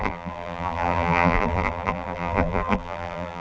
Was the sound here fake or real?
fake